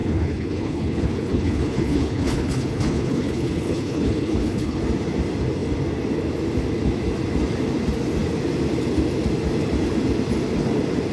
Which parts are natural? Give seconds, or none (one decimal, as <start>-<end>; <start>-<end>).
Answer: 4.8-11.1